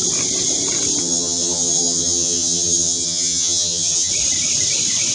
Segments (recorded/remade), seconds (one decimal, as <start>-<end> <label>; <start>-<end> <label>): 0.0-1.0 recorded; 1.0-4.1 remade; 4.1-5.1 recorded